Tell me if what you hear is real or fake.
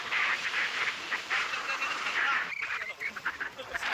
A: fake